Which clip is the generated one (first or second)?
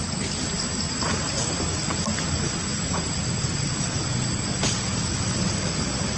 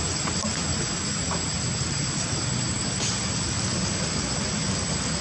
first